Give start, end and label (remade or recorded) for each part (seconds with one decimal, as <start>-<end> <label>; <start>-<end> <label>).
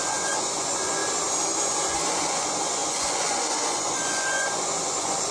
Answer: 0.0-1.0 remade; 1.0-1.6 recorded; 1.6-5.3 remade